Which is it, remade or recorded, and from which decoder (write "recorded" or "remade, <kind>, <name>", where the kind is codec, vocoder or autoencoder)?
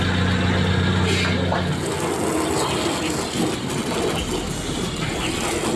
recorded